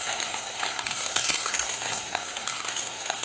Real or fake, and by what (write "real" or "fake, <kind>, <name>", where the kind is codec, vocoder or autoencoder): fake, codec, SNAC